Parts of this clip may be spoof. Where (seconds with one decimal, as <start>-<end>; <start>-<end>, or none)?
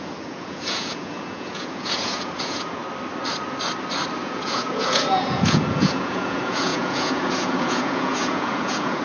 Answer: 0.0-2.8; 4.2-9.0